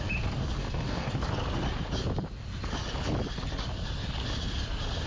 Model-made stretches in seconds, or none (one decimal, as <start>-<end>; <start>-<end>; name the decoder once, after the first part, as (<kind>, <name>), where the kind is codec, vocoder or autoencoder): 0.6-1.1 (codec, DAC)